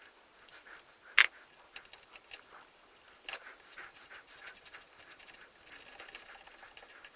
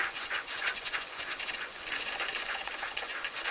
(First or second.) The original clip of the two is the first